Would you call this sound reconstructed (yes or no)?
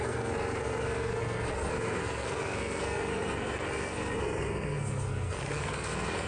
yes